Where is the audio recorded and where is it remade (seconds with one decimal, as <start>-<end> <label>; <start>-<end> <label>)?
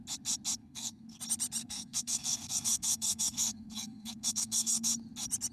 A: 0.0-0.6 recorded; 0.6-1.2 remade; 1.2-1.6 recorded; 1.6-4.9 remade; 4.9-5.5 recorded